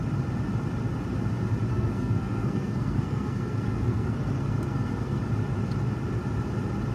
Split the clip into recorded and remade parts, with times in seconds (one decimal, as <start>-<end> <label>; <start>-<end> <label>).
0.0-1.7 recorded; 1.7-5.2 remade; 5.2-6.9 recorded